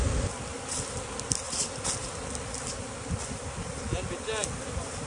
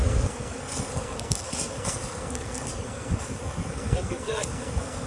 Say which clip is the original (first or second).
first